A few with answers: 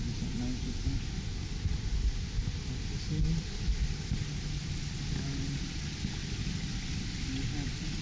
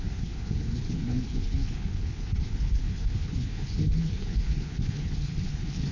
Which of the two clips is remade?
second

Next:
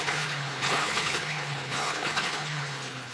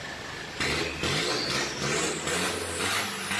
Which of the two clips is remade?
first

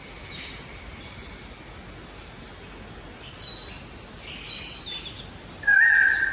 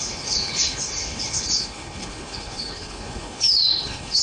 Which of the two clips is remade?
second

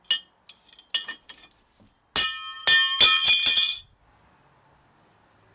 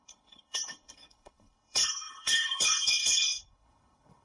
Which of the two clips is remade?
second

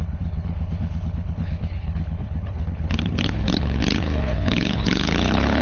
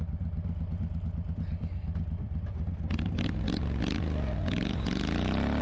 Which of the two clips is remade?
first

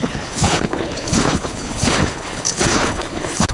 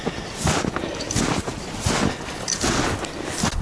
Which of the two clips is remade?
first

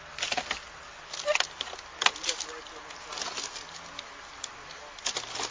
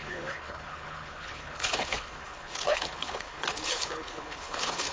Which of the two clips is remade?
second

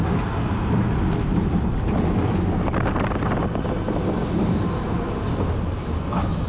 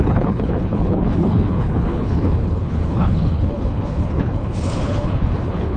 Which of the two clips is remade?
second